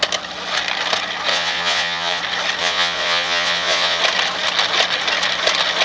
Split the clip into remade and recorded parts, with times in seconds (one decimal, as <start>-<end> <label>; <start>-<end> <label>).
0.0-1.3 recorded; 1.3-2.2 remade; 2.2-2.6 recorded; 2.6-4.0 remade; 4.0-5.8 recorded